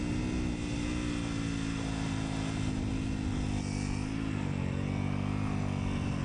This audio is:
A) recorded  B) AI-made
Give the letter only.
A